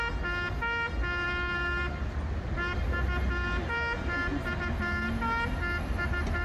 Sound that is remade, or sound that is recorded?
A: recorded